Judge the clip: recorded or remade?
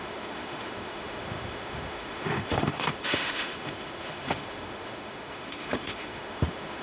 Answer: remade